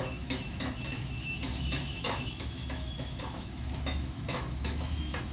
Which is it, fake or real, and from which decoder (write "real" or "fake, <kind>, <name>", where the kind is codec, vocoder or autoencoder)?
fake, autoencoder, DAC-VAE